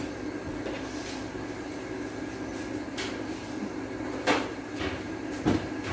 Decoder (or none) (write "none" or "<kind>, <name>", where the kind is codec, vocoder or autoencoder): none